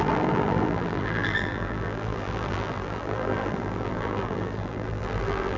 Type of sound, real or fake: fake